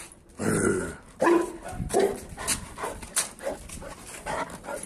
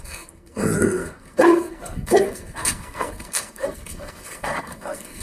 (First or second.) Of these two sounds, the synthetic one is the second